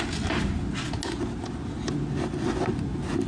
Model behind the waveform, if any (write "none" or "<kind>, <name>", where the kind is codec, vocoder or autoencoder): none